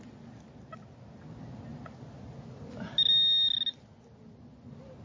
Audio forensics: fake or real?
real